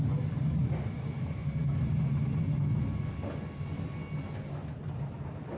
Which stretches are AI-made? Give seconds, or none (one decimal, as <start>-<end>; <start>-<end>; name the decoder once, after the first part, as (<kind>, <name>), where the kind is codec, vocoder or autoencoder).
none